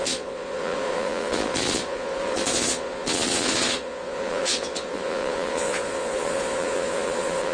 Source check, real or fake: fake